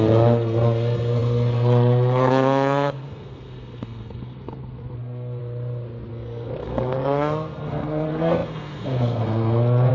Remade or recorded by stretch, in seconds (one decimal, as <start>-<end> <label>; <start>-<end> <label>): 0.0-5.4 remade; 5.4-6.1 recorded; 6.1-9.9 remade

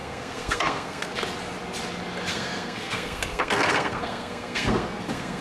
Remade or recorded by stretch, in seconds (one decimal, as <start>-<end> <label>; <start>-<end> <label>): 0.0-1.1 remade; 1.1-2.3 recorded; 2.3-5.4 remade

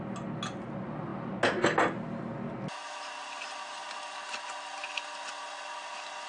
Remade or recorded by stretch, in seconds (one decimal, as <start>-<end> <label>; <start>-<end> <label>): 0.0-6.3 recorded